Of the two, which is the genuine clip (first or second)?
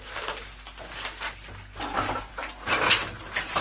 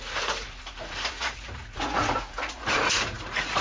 first